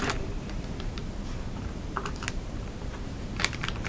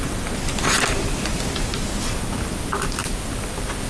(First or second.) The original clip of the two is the second